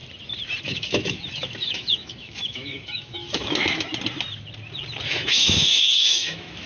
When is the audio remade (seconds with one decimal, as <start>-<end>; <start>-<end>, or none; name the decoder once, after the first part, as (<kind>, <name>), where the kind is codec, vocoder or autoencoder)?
0.6-3.9 (autoencoder, DAC-VAE); 5.1-6.7